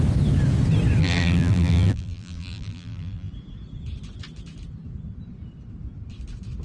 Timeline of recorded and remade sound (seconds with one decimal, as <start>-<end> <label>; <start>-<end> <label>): 0.0-1.0 recorded; 1.0-3.3 remade; 3.3-6.6 recorded